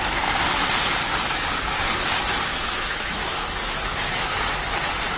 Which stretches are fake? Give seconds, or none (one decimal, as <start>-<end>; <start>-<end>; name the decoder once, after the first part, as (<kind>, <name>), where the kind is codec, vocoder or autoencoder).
2.5-4.4 (autoencoder, DAC-VAE)